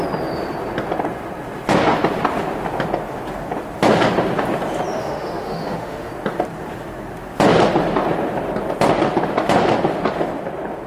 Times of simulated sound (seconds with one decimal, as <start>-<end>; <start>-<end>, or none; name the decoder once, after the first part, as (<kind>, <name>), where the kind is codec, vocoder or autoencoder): 5.0-6.1 (autoencoder, DAC-VAE)